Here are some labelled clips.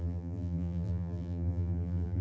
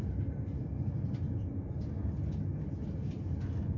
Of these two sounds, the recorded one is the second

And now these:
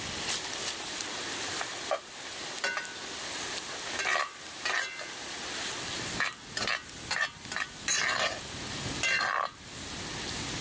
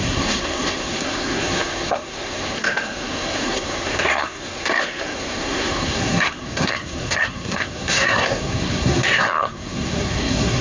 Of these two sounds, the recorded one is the first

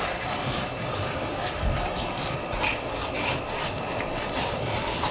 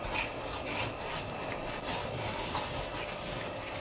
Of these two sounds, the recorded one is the second